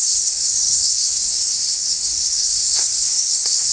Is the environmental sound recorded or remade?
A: remade